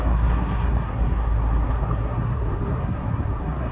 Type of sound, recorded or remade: remade